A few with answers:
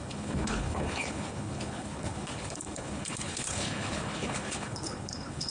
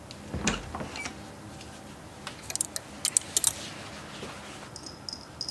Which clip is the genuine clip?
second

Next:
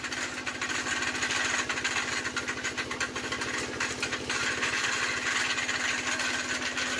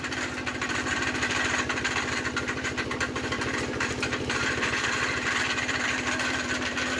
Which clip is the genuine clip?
first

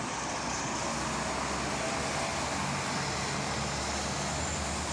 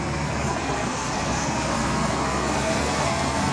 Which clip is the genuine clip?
first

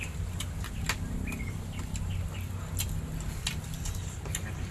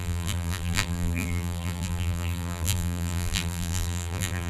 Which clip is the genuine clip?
first